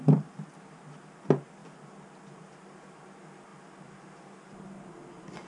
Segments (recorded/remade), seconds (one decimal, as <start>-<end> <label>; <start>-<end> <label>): 0.0-5.5 recorded